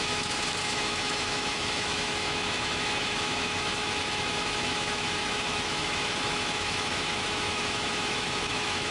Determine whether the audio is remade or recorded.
remade